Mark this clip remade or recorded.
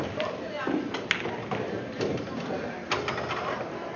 recorded